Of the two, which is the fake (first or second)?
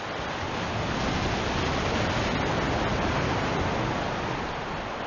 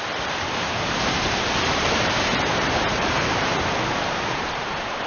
second